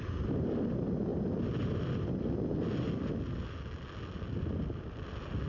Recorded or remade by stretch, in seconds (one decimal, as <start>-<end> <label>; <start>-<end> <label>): 0.0-5.5 recorded